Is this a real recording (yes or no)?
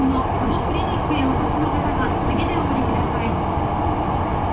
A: yes